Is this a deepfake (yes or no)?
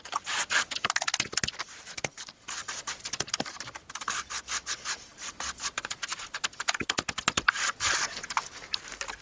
no